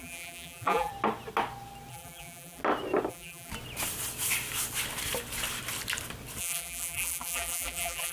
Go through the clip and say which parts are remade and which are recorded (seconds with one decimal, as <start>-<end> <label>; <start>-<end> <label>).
0.0-0.9 remade; 0.9-1.9 recorded; 1.9-2.6 remade; 2.6-3.1 recorded; 3.1-3.5 remade; 3.5-6.4 recorded; 6.4-8.1 remade

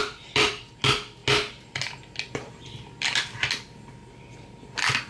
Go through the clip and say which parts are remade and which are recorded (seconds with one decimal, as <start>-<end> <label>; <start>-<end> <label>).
0.0-0.7 remade; 0.7-5.1 recorded

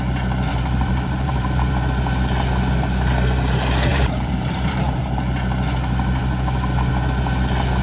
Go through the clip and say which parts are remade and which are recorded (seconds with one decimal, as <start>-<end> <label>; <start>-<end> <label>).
0.0-0.5 recorded; 0.5-1.7 remade; 1.7-3.9 recorded; 3.9-5.0 remade; 5.0-7.8 recorded

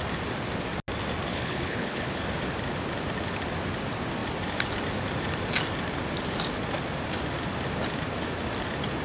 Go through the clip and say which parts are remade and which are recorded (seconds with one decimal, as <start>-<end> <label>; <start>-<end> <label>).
0.0-1.3 recorded; 1.3-2.2 remade; 2.2-9.0 recorded